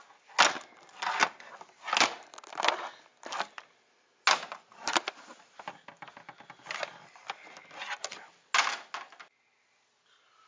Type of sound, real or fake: real